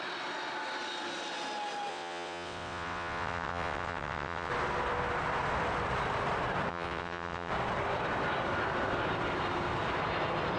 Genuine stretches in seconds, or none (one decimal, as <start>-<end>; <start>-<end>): 0.0-1.9; 4.5-6.7; 7.5-10.6